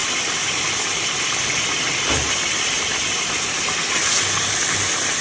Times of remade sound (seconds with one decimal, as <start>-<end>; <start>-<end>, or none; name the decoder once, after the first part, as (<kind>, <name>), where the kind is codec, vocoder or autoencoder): none

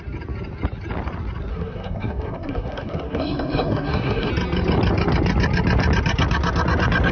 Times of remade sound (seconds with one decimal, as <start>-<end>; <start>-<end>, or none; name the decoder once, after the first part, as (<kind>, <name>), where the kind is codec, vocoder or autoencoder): 1.5-4.3 (codec, SNAC)

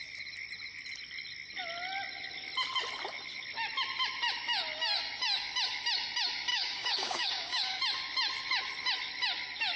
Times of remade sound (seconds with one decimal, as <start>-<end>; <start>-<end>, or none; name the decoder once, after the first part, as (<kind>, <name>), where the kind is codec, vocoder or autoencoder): 6.5-7.8 (codec, DAC)

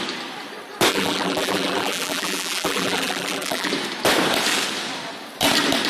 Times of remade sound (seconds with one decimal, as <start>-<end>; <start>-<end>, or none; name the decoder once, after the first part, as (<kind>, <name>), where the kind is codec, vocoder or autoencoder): 0.9-3.7 (vocoder, BigVGAN v2)

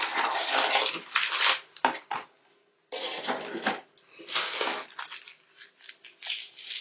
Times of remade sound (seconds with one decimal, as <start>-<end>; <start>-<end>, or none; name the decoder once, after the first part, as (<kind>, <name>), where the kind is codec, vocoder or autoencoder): none

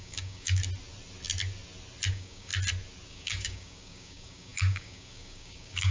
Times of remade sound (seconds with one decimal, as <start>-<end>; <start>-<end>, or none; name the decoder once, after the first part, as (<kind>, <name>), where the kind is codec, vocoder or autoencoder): 0.0-0.6 (codec, DAC); 2.1-2.5; 3.1-5.9